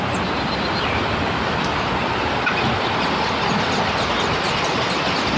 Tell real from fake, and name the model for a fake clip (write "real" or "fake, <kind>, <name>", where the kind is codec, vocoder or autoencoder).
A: real